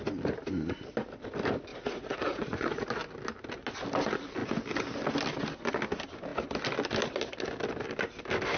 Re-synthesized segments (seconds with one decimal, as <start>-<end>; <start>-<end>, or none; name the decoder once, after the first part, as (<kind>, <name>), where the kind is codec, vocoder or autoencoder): 1.7-2.9 (vocoder, Vocos)